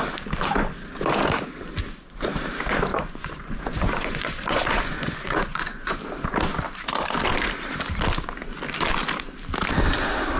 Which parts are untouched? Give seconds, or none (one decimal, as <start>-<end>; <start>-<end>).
0.0-2.9; 6.0-10.4